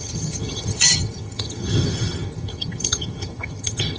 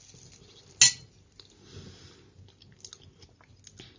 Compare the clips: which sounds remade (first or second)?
first